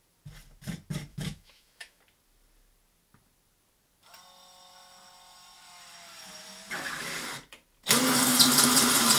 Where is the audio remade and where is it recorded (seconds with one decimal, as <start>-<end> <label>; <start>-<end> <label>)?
0.0-1.1 recorded; 1.1-2.0 remade; 2.0-9.2 recorded